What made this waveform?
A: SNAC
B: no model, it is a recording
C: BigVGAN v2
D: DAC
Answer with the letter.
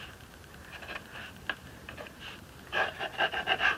C